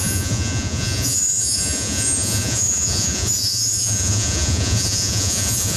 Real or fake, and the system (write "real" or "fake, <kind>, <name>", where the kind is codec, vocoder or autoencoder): fake, vocoder, Vocos